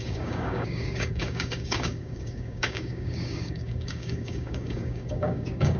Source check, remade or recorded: remade